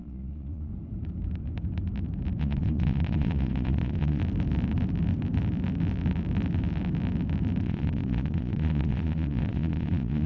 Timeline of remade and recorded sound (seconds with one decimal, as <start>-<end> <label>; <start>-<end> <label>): 0.0-0.7 remade; 0.7-2.4 recorded; 2.4-4.2 remade; 4.2-7.6 recorded; 7.6-10.3 remade

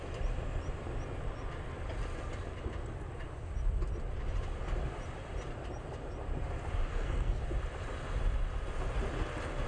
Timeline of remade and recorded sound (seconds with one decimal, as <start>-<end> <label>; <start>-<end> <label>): 0.0-6.9 recorded; 6.9-7.4 remade; 7.4-9.7 recorded

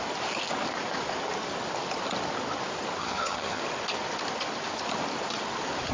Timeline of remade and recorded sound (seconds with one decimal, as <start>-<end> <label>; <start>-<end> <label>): 0.0-3.0 recorded; 3.0-3.6 remade; 3.6-5.9 recorded

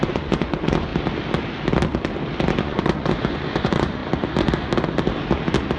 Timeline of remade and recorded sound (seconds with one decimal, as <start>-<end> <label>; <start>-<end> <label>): 0.0-0.9 remade; 0.9-2.6 recorded; 2.6-4.0 remade; 4.0-5.8 recorded

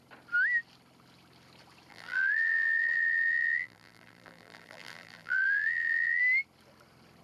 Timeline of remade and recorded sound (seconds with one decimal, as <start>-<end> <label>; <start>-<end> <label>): 0.0-1.9 recorded; 1.9-6.2 remade; 6.2-7.2 recorded

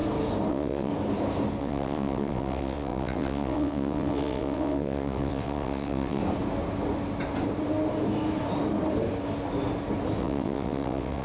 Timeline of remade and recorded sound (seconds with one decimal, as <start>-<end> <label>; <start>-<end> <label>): 0.0-0.5 recorded; 0.5-0.9 remade; 0.9-1.6 recorded; 1.6-6.2 remade; 6.2-10.2 recorded; 10.2-11.2 remade

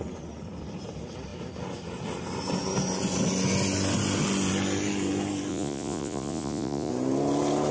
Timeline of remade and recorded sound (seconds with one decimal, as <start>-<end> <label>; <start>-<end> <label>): 0.0-5.5 recorded; 5.5-6.9 remade; 6.9-7.7 recorded